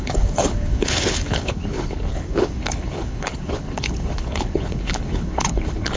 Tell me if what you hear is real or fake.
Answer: fake